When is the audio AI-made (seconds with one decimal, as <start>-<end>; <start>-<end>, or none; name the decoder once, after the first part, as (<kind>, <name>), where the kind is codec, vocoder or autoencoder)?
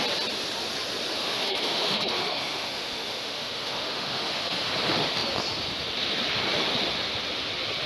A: 1.2-4.7 (autoencoder, DAC-VAE)